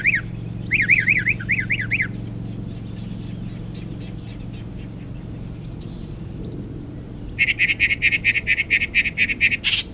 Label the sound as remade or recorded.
recorded